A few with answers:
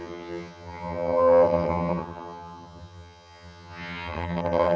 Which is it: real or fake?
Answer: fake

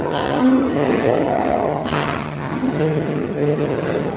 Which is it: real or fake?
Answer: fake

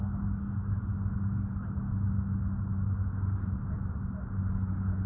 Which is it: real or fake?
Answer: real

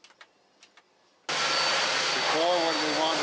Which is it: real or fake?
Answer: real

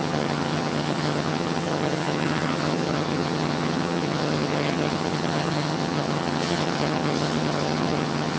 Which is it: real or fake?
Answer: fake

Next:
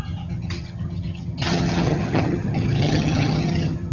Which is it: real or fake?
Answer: fake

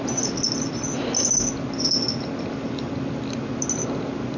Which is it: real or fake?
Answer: real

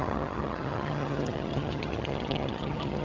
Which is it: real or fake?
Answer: fake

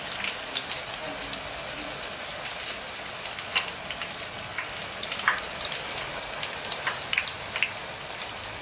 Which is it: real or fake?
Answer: real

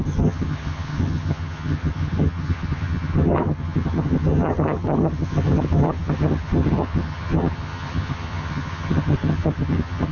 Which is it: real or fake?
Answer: fake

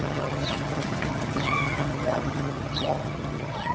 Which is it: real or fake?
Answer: fake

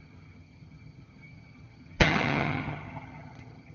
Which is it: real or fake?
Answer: fake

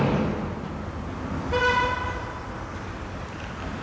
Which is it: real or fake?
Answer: real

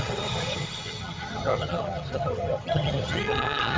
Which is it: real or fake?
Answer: fake